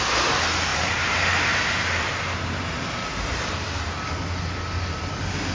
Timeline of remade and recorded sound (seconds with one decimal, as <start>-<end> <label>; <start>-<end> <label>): 0.0-0.7 recorded; 0.7-3.9 remade; 3.9-5.5 recorded